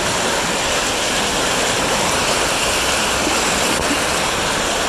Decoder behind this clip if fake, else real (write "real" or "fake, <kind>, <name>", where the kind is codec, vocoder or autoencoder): real